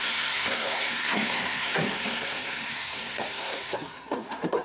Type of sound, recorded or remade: remade